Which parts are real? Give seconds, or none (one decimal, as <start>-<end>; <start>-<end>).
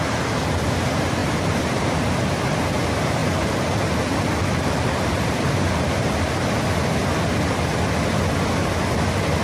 0.0-3.2; 6.2-9.4